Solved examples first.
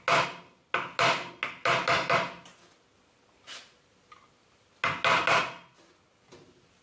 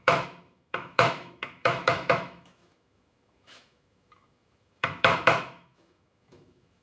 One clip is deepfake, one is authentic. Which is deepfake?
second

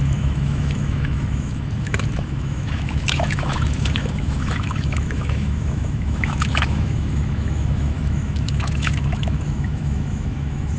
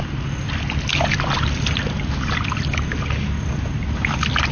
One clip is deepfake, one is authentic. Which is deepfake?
first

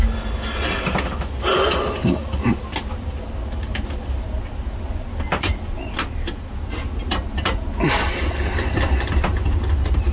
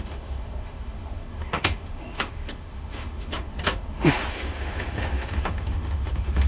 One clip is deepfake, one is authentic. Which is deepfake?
second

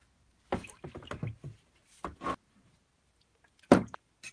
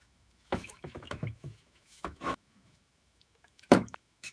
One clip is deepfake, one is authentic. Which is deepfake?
second